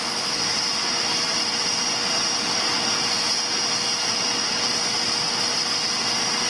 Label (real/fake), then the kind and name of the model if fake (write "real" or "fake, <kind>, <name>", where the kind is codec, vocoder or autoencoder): real